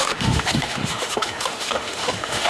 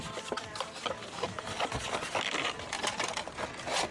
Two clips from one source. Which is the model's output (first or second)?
first